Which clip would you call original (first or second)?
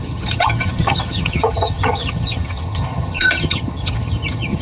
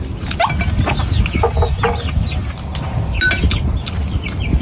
second